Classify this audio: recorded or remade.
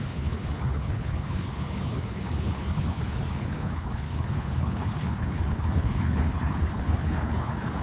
remade